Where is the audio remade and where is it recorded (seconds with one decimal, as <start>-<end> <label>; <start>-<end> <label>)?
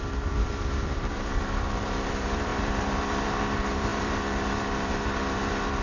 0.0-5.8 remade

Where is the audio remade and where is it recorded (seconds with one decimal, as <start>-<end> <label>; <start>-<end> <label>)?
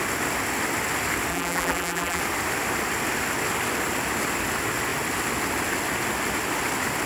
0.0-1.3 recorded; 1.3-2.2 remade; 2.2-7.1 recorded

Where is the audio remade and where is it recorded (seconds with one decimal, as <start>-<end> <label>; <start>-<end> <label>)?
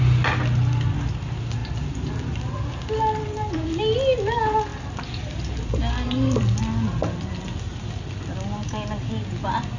0.0-4.7 recorded; 4.7-6.6 remade; 6.6-7.0 recorded; 7.0-9.1 remade; 9.1-9.8 recorded